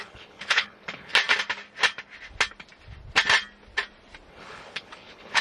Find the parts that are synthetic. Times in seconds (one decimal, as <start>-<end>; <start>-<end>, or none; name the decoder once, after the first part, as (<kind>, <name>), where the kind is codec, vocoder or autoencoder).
0.0-1.1 (codec, HILCodec); 4.3-5.4